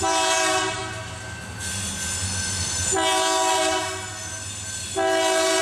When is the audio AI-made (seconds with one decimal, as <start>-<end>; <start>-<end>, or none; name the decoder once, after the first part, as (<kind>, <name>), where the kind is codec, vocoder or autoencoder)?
0.0-0.8 (vocoder, BigVGAN v2); 2.5-2.9; 3.5-4.1